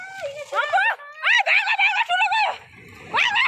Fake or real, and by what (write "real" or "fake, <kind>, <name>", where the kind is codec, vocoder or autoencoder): real